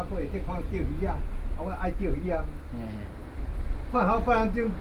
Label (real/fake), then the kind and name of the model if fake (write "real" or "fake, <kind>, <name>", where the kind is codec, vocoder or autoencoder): real